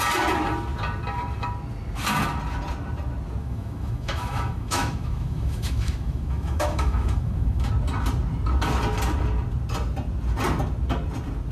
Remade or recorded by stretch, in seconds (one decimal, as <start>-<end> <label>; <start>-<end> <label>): 0.0-3.4 recorded; 3.4-7.7 remade; 7.7-11.5 recorded